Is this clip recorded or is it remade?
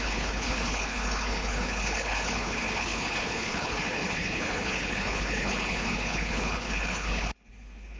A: remade